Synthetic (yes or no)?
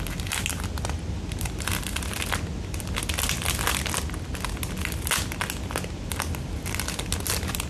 no